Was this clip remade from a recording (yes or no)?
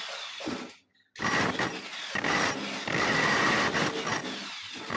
no